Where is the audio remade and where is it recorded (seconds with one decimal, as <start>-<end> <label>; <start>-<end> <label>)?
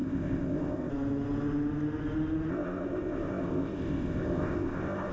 0.0-0.9 remade; 0.9-2.5 recorded; 2.5-5.1 remade